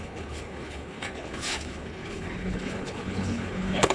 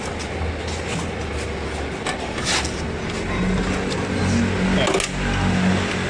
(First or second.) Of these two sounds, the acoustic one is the second